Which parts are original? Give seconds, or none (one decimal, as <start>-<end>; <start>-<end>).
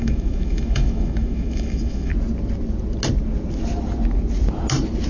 2.1-5.1